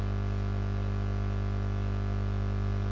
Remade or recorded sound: recorded